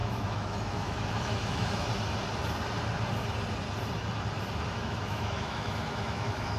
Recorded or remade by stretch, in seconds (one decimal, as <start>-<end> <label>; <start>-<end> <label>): 0.0-1.9 remade; 1.9-4.7 recorded; 4.7-6.6 remade